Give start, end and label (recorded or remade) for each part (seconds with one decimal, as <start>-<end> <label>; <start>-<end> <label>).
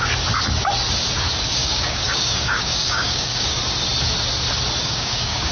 0.0-1.6 recorded; 1.6-3.6 remade; 3.6-4.8 recorded; 4.8-5.5 remade